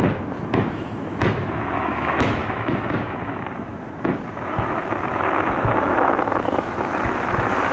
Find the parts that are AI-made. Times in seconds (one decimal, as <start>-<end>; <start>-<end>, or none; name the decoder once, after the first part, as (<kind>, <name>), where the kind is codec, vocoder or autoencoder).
0.0-7.7 (autoencoder, DAC-VAE)